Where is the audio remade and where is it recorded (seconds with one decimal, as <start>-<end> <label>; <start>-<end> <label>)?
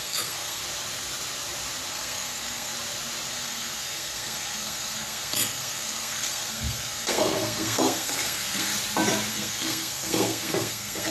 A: 0.0-0.6 remade; 0.6-1.9 recorded; 1.9-2.7 remade; 2.7-3.3 recorded; 3.3-8.7 remade; 8.7-9.3 recorded; 9.3-11.1 remade